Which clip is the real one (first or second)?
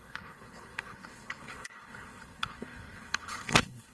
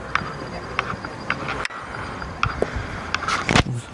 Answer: second